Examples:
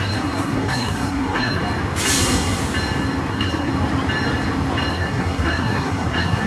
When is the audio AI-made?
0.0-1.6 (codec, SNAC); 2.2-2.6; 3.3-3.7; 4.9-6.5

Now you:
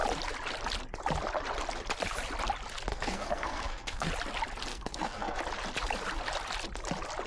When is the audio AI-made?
2.9-4.1 (codec, SNAC); 4.7-5.4

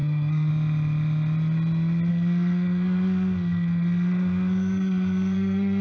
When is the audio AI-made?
0.0-0.5 (codec, SNAC); 2.1-5.8

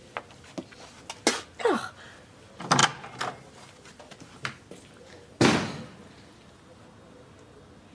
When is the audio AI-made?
none

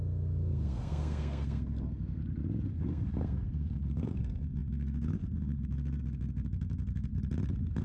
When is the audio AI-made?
0.0-2.2 (codec, SNAC); 2.7-7.1

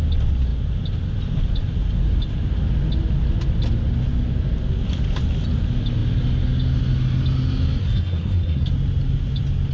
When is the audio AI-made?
7.8-8.7 (codec, SNAC)